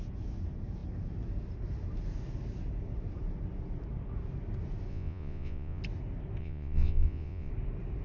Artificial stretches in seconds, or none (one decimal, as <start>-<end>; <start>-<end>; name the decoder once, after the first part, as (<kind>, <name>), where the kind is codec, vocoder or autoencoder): 4.9-5.8 (vocoder, Vocos); 6.4-7.5